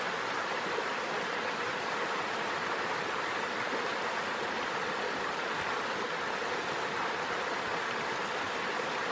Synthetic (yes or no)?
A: no